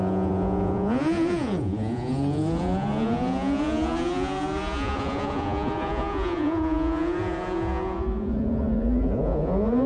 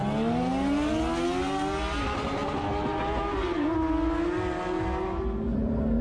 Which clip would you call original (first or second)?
second